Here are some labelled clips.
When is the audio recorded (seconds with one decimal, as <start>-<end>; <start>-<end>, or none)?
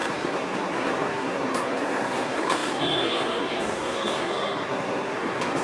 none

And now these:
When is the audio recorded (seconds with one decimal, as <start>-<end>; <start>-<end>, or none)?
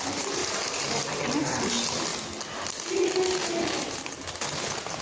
0.0-0.4; 1.6-5.0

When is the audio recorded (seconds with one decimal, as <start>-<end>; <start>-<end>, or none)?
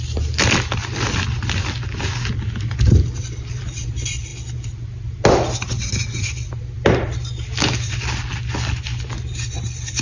0.0-10.0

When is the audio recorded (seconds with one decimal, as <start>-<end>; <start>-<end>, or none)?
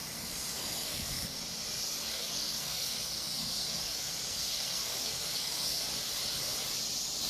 1.4-2.1; 5.9-7.3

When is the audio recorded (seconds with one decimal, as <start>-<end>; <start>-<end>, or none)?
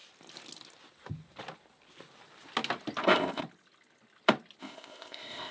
0.0-3.0; 3.4-4.6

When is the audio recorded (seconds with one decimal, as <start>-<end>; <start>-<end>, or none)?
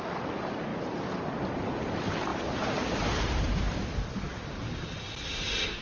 0.0-0.7; 1.2-5.8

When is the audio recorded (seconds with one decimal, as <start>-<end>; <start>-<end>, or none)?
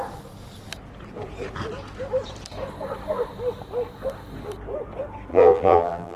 0.0-5.3